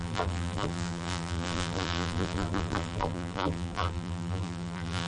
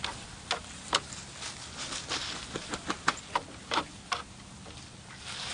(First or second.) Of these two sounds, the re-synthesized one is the first